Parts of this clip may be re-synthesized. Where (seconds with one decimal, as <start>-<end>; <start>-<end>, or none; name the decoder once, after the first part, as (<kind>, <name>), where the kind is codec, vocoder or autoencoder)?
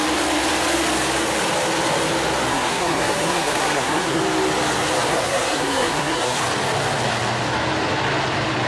2.5-4.2 (codec, SNAC); 5.1-6.4